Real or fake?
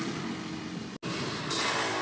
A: real